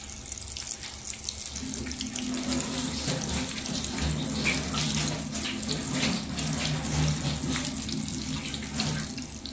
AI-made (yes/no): no